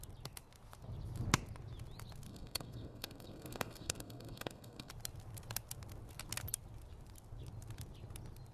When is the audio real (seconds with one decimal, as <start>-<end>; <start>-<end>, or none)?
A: 0.0-2.3; 4.9-8.5